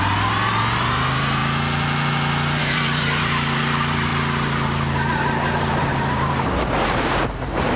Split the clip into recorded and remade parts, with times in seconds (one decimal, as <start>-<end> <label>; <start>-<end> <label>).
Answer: 0.0-1.4 remade; 1.4-2.6 recorded; 2.6-4.1 remade; 4.1-5.6 recorded; 5.6-7.8 remade